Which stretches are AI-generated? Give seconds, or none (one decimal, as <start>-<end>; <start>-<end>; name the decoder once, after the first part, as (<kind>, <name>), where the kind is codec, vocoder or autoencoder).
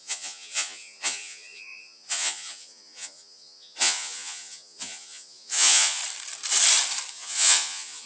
0.0-6.0 (vocoder, Vocos); 7.1-8.1